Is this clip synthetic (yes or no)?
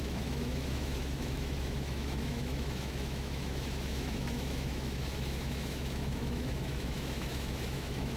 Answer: yes